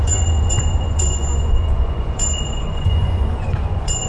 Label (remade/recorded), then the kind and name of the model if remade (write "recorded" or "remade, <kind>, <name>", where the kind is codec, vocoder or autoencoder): remade, vocoder, Vocos